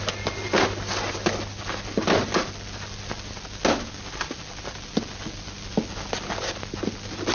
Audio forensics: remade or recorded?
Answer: recorded